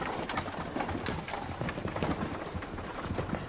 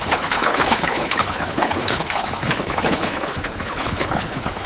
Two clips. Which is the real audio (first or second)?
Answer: first